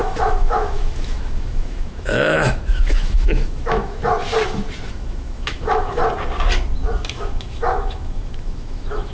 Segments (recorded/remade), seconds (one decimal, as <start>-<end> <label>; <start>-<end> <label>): 0.0-4.0 remade; 4.0-4.9 recorded; 4.9-6.0 remade; 6.0-7.1 recorded; 7.1-9.1 remade